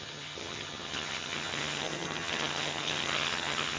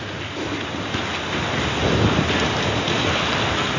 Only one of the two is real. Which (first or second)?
second